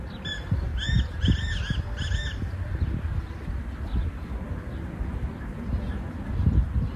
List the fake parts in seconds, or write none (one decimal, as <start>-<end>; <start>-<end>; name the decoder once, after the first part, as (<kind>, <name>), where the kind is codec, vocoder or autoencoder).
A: none

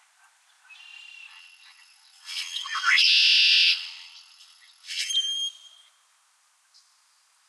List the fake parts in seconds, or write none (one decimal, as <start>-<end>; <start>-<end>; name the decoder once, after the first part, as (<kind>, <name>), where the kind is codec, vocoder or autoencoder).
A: 1.3-5.1 (vocoder, WaveNeXt)

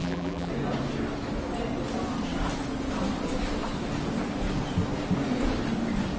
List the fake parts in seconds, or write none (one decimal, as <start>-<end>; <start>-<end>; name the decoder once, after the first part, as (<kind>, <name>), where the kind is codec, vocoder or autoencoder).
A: 0.0-0.5 (vocoder, BigVGAN v2)